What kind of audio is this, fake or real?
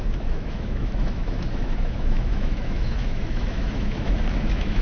fake